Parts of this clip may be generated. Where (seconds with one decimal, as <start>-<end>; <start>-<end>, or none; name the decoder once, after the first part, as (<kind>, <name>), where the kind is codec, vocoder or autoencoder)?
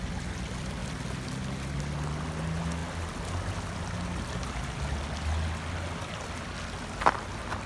none